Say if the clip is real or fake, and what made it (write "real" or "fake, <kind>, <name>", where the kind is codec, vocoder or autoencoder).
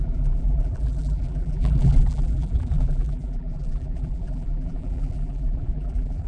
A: fake, vocoder, BigVGAN v2